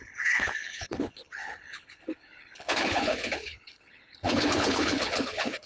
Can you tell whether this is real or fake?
fake